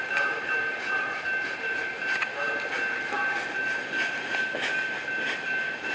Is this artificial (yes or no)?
no